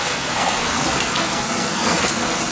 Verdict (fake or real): fake